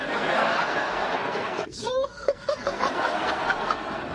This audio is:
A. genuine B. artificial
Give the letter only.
B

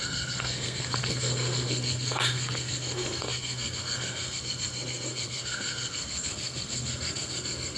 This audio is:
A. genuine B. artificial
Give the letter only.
B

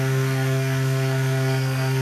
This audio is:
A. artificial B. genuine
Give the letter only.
A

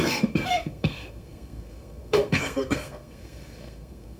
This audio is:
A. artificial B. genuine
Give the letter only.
A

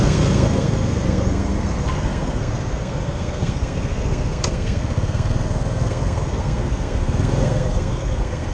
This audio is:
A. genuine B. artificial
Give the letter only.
B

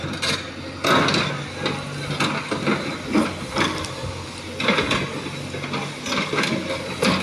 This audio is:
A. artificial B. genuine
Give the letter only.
B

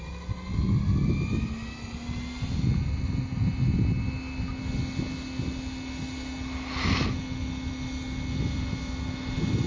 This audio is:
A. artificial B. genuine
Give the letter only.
B